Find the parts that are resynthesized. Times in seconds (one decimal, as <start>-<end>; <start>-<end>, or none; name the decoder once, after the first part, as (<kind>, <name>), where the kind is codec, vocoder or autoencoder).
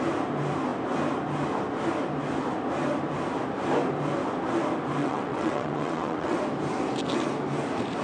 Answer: 5.0-6.4 (vocoder, WaveNeXt)